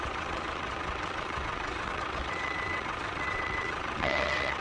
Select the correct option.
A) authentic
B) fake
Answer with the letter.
B